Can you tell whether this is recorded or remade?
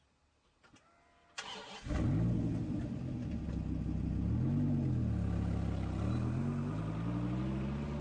recorded